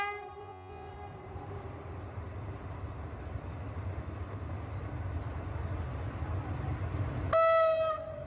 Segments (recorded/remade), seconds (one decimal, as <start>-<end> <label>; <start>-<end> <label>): 0.0-0.4 recorded; 0.4-0.9 remade; 0.9-8.3 recorded